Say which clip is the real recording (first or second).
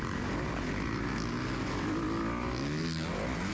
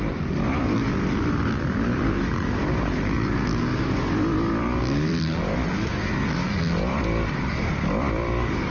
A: first